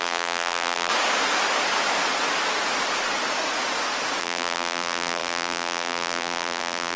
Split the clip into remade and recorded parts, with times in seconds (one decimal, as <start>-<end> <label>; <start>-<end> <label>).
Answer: 0.0-0.9 remade; 0.9-4.2 recorded; 4.2-7.0 remade